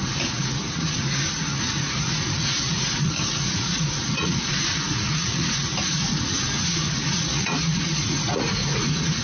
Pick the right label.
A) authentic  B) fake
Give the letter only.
B